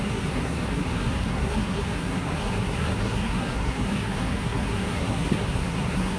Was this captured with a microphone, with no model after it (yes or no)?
no